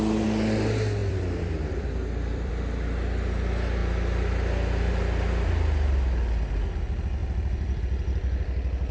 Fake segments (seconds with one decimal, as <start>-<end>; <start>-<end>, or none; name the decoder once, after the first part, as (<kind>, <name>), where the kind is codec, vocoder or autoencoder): 1.0-2.5 (vocoder, BigVGAN v2); 7.2-7.8